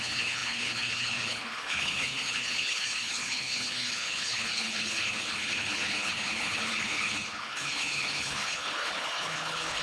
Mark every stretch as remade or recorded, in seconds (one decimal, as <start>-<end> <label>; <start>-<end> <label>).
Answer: 0.0-9.8 remade